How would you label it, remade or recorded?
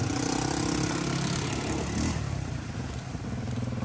remade